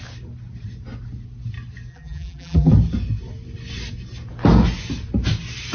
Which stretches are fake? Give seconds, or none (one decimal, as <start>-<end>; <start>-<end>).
1.9-2.7